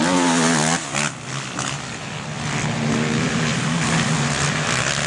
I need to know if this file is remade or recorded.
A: recorded